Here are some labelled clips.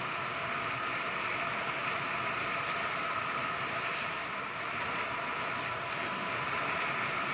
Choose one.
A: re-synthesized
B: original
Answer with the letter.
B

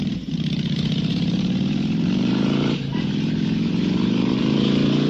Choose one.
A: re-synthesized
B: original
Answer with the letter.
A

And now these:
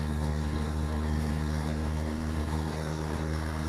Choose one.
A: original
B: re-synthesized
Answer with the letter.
B